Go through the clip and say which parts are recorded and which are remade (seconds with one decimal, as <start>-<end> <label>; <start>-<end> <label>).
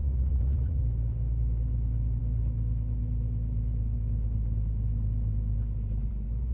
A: 0.0-0.8 remade; 0.8-6.5 recorded